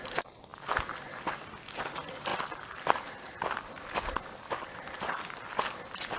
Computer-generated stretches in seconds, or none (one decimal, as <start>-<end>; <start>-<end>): none